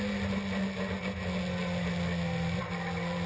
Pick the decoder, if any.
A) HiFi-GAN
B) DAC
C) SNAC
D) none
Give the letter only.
D